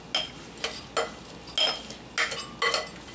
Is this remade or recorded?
recorded